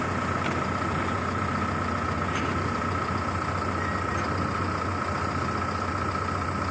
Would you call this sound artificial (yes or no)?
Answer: no